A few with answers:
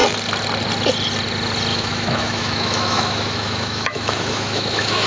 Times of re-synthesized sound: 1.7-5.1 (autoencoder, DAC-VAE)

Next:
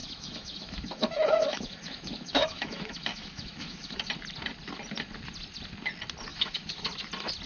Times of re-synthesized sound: 0.0-4.1 (autoencoder, DAC-VAE); 6.3-6.9